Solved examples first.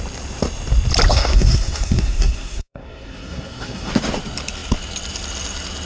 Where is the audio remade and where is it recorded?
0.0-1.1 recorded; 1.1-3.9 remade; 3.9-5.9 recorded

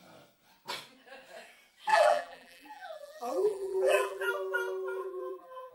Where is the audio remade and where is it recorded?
0.0-1.9 recorded; 1.9-4.3 remade; 4.3-5.0 recorded; 5.0-5.7 remade

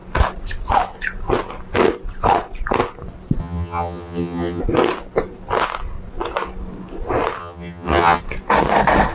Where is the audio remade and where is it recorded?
0.0-3.4 recorded; 3.4-4.6 remade; 4.6-7.4 recorded; 7.4-8.2 remade; 8.2-9.1 recorded